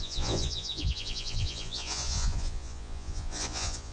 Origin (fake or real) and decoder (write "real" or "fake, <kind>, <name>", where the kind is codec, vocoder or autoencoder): fake, vocoder, Vocos